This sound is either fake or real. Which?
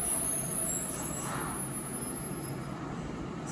real